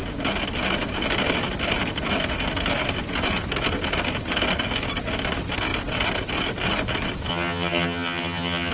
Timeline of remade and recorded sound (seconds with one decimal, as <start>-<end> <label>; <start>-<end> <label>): 0.0-7.3 recorded; 7.3-8.7 remade